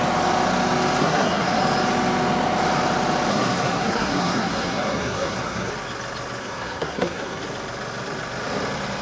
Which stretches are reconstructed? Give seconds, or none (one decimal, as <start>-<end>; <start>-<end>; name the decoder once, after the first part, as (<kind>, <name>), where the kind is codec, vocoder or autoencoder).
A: 1.0-1.6 (codec, SNAC); 3.3-5.7; 6.4-7.4